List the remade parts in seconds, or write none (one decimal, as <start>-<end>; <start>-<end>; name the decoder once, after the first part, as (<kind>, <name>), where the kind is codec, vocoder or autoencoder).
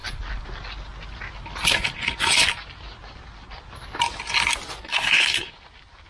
4.9-5.5 (codec, SNAC)